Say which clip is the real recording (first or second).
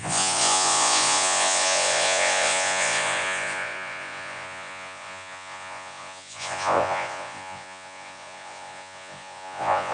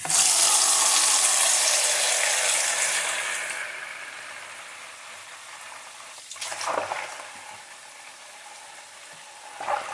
second